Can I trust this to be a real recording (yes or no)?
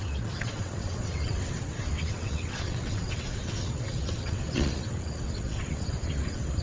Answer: no